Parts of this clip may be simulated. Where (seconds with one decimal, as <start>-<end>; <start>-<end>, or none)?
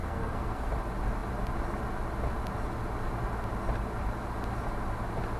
0.0-0.7